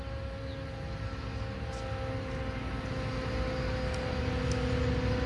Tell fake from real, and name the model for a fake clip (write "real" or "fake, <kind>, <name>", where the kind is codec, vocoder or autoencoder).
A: real